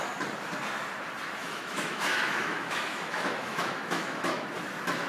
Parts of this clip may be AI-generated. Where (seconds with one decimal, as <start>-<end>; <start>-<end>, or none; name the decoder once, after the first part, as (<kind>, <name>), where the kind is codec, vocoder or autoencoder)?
1.4-4.5 (autoencoder, DAC-VAE)